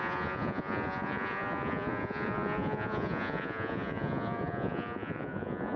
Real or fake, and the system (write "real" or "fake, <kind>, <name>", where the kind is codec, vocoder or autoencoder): fake, vocoder, Vocos